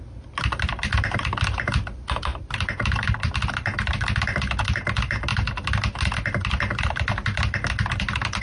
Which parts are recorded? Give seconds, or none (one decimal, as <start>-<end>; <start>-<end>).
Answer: 0.0-2.3; 3.3-8.4